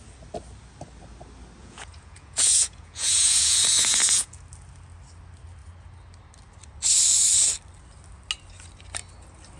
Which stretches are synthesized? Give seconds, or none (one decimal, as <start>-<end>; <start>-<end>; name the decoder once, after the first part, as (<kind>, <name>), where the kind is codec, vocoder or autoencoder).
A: 1.6-4.4 (vocoder, Vocos)